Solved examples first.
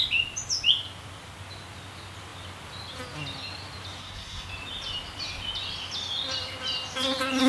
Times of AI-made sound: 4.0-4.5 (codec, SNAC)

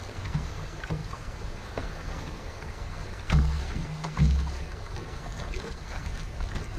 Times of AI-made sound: 0.0-6.8 (codec, SNAC)

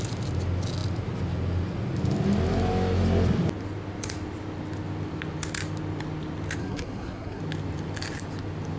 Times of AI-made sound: 6.6-7.4 (codec, SNAC)

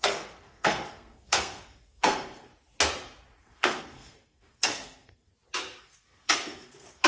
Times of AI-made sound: 0.0-2.5 (codec, SNAC); 3.4-5.3; 5.8-7.1